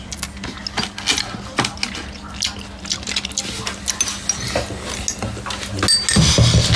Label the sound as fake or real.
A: real